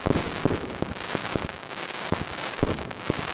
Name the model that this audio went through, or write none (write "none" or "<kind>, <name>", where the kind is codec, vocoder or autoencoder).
codec, DAC